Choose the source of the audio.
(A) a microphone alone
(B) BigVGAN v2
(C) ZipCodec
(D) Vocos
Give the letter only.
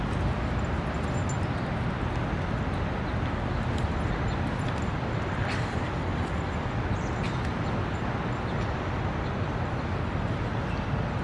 A